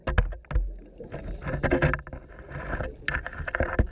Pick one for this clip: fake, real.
real